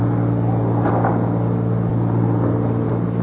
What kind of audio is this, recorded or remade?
recorded